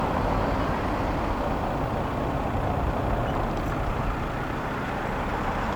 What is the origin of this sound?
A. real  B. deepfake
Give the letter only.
A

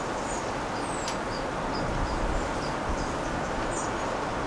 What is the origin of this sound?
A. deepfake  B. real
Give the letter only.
B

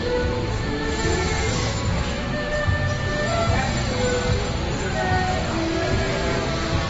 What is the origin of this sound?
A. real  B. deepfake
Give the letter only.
A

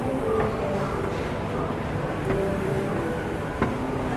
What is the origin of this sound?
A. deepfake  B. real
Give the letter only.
A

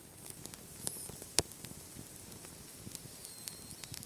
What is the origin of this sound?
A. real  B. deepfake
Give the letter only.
A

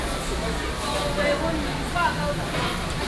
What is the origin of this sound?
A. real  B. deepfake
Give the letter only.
A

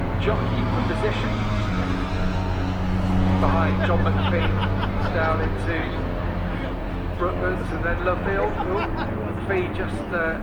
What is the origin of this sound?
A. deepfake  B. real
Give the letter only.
B